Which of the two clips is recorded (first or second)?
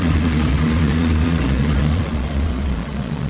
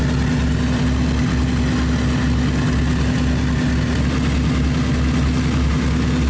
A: second